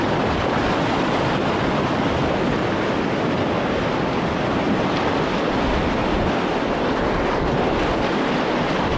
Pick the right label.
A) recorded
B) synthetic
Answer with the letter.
A